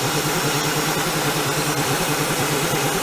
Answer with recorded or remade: recorded